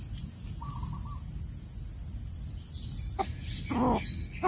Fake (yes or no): no